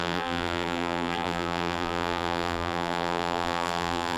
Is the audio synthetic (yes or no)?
yes